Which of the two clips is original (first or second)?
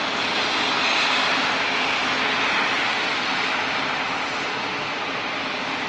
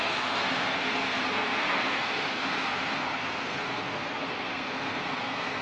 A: first